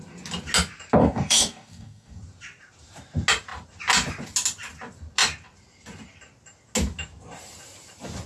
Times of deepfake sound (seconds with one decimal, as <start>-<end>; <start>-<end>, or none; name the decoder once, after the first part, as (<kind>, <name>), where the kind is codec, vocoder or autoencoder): 1.0-2.2 (codec, DAC)